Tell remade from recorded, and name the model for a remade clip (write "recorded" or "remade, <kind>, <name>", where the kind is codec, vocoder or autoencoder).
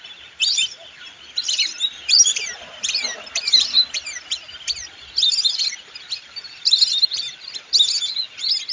recorded